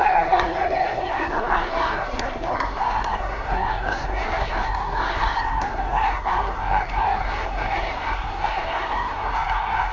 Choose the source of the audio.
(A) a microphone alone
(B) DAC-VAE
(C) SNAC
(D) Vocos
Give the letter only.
C